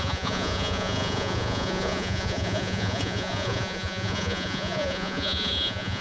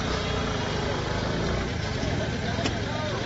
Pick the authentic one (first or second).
second